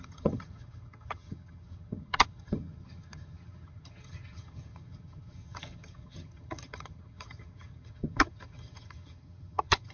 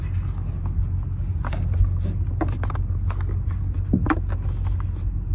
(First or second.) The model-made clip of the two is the first